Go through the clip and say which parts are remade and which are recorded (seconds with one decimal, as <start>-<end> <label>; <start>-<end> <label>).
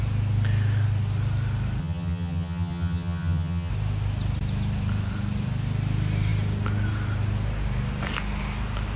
0.0-1.8 recorded; 1.8-3.7 remade; 3.7-9.0 recorded